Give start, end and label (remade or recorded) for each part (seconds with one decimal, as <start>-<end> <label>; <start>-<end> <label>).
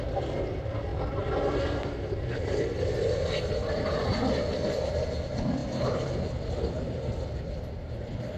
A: 0.0-8.4 recorded